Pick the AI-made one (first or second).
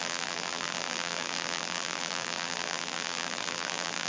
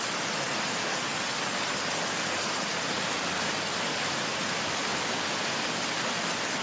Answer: first